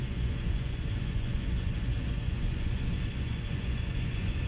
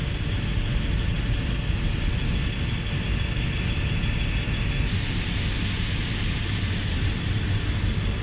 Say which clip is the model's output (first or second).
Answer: first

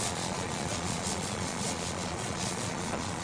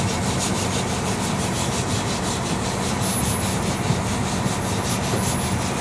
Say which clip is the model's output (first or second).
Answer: first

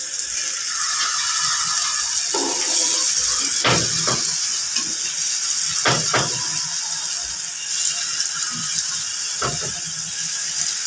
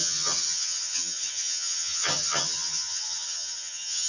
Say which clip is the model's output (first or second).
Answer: second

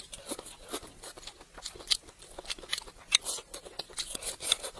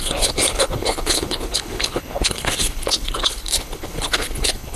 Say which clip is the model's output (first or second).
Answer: second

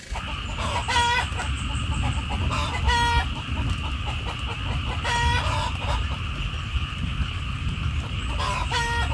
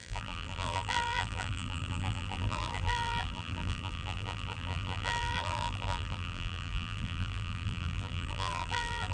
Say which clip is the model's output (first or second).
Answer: second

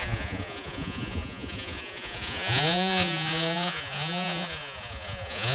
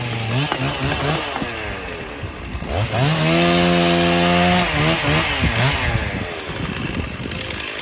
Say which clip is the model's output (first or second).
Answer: first